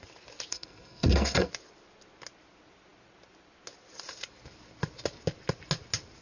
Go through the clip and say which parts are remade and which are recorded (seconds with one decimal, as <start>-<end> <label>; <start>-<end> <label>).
0.0-0.5 recorded; 0.5-1.5 remade; 1.5-6.2 recorded